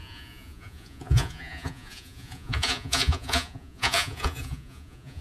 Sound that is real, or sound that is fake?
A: fake